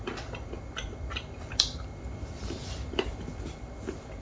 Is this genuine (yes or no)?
no